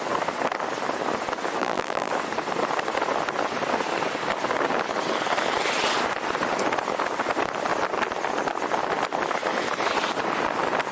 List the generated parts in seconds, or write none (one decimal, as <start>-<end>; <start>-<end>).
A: 1.6-2.1